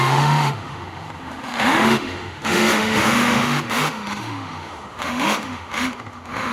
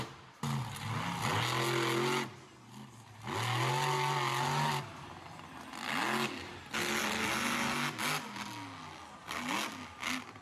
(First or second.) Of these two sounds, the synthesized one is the first